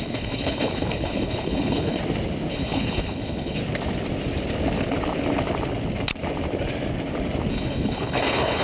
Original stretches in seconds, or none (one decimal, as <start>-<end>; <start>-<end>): 2.0-2.5; 3.6-7.5